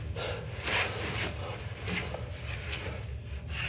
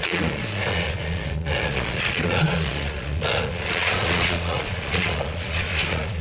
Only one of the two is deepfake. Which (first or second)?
second